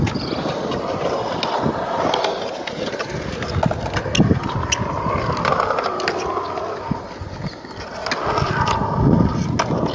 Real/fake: real